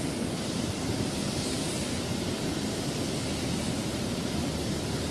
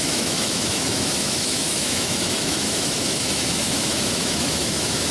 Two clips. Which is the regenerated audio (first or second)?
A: second